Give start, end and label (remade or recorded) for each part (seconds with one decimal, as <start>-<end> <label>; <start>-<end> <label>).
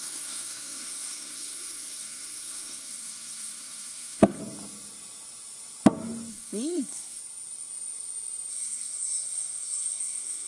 0.0-4.4 remade; 4.4-6.3 recorded; 6.3-7.2 remade; 7.2-8.5 recorded; 8.5-10.5 remade